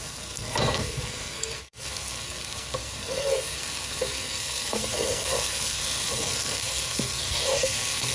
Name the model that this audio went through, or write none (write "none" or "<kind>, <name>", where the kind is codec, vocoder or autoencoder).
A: codec, SNAC